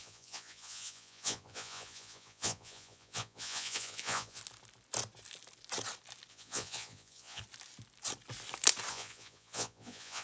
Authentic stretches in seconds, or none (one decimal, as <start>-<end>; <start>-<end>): 4.4-6.3; 7.4-8.9